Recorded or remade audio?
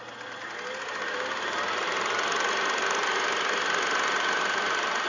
recorded